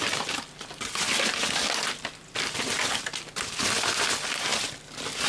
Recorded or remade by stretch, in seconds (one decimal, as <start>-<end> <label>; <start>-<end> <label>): 0.0-5.3 recorded